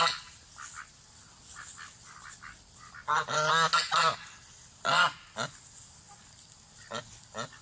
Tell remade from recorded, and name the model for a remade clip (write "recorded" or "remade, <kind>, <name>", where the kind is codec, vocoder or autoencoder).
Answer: recorded